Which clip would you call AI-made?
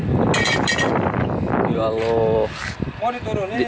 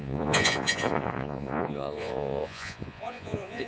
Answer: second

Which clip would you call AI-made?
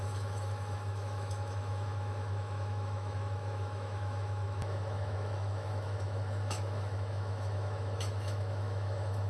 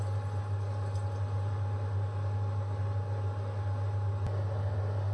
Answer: first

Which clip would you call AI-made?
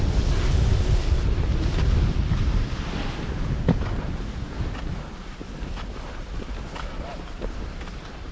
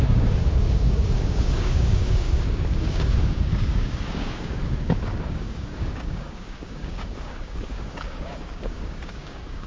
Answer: second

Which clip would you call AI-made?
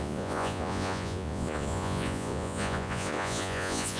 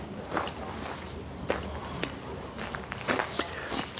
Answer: first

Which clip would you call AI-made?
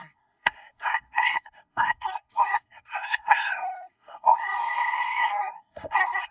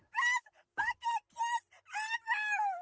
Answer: first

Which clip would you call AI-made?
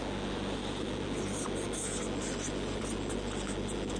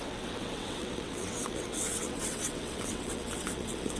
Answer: second